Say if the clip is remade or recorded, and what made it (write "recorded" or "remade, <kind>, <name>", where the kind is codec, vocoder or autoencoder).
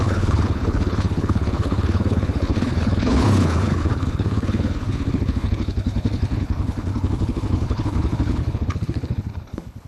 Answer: remade, codec, HILCodec